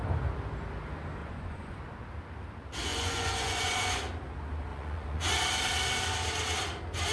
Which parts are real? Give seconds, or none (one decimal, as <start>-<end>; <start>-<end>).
0.0-1.2; 1.8-2.9; 4.0-4.7; 5.3-7.1